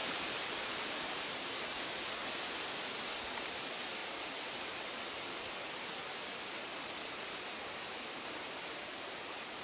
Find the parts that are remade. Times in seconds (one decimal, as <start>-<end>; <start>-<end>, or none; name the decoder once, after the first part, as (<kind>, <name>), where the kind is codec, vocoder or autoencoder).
1.0-2.2 (vocoder, BigVGAN v2); 3.3-9.6